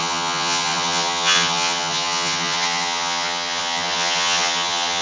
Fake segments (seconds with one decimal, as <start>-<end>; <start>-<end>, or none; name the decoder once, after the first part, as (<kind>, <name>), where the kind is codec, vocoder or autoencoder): 0.0-5.0 (vocoder, HiFi-GAN)

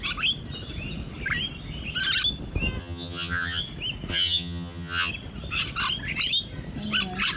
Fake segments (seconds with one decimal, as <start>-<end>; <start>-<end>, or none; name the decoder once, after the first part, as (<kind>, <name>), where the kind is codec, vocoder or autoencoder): 2.8-3.6 (vocoder, HiFi-GAN); 4.1-5.1

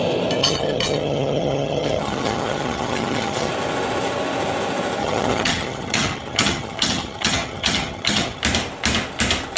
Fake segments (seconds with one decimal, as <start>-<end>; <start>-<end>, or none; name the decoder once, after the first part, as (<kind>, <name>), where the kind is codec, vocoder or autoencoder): 0.4-3.5 (vocoder, HiFi-GAN); 5.0-8.4

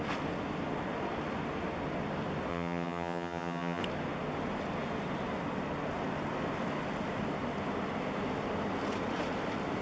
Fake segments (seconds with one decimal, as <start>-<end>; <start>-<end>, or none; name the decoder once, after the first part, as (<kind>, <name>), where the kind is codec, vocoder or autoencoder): 2.5-3.8 (vocoder, HiFi-GAN)

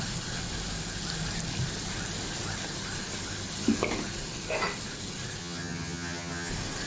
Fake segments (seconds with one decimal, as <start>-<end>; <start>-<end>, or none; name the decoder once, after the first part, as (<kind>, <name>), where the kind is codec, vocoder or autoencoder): 5.4-6.5 (vocoder, HiFi-GAN)

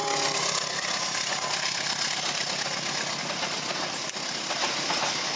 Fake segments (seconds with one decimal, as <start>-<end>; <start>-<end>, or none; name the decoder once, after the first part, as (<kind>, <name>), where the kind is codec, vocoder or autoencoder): none